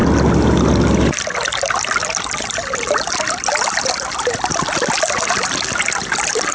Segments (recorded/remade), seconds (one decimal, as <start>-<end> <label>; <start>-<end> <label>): 0.0-6.5 recorded